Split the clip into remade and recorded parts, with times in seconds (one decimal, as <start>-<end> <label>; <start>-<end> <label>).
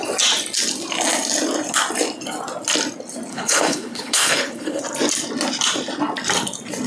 0.0-3.3 recorded; 3.3-4.8 remade; 4.8-6.9 recorded